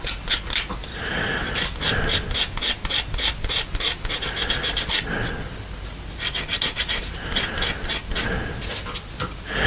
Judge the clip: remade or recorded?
recorded